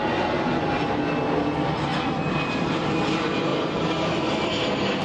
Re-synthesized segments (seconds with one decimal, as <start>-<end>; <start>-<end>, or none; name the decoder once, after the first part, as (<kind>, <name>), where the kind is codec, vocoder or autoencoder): none